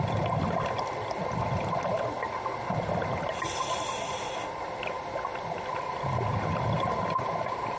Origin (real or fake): real